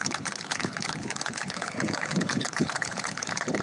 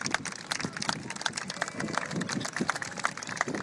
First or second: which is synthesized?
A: first